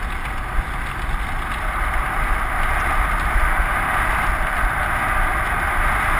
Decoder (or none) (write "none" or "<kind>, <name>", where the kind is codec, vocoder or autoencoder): none